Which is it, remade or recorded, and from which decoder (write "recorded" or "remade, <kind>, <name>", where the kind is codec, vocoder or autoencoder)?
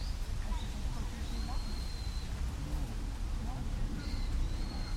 recorded